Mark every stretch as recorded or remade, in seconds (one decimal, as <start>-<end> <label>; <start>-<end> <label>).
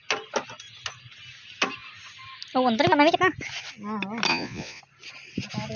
0.0-4.3 recorded; 4.3-4.8 remade; 4.8-5.8 recorded